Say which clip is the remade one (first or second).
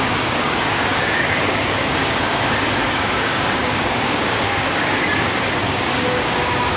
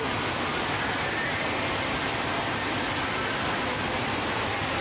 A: first